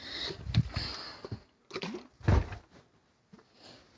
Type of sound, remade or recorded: recorded